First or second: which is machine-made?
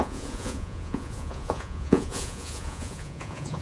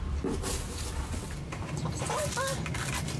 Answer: first